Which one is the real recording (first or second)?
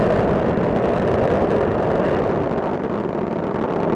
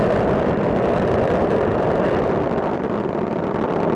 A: first